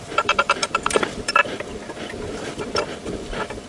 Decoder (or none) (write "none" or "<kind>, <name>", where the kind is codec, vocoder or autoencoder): vocoder, BigVGAN v2